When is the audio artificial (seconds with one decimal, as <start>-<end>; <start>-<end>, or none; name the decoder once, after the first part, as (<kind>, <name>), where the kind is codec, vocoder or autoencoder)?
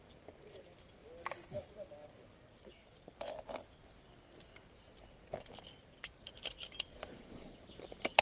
6.9-7.5 (vocoder, Vocos)